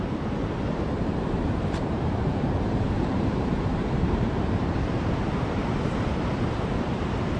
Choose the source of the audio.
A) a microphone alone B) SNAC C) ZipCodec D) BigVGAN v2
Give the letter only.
D